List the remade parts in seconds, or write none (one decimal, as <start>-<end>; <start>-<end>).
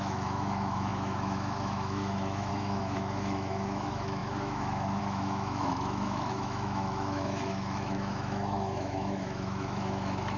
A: 0.0-10.4